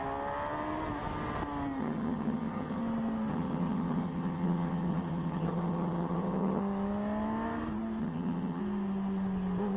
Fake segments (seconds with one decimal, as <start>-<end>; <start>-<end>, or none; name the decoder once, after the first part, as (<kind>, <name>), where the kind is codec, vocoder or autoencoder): 1.8-2.8 (vocoder, HiFi-GAN); 3.3-6.6; 8.0-8.6